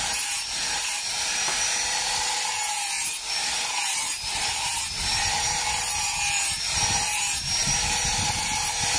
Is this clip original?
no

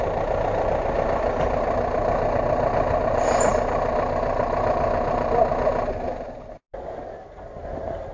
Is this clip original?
yes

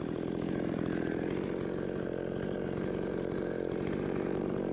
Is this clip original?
no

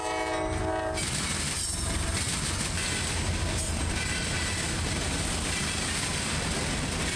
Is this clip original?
yes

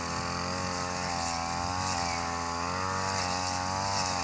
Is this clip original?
yes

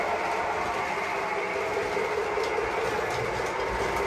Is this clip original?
yes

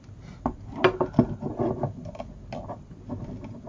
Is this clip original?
yes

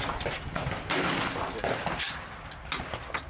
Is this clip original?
yes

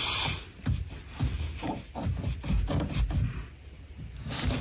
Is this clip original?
yes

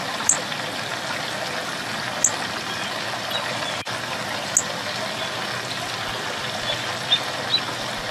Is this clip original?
yes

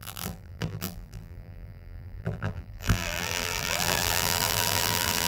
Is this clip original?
no